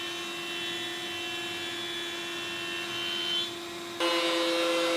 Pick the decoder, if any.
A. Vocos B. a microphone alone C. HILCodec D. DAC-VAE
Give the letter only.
B